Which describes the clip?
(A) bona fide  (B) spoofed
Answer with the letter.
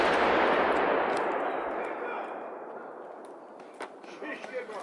A